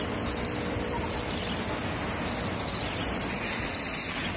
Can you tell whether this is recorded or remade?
recorded